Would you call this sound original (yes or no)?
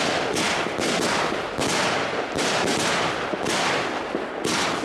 yes